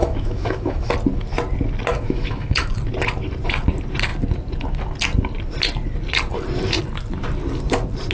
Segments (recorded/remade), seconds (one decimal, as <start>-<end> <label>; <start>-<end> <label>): 0.0-0.9 remade; 0.9-1.9 recorded; 1.9-2.7 remade; 2.7-8.1 recorded